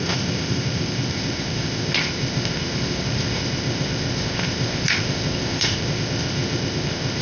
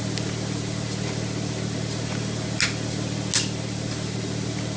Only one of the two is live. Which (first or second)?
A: second